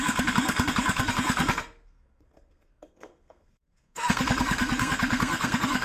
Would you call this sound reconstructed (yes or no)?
yes